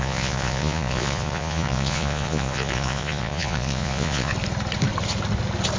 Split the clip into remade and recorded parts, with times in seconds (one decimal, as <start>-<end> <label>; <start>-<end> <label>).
0.0-4.3 remade; 4.3-5.8 recorded